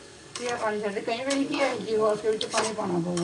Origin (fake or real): fake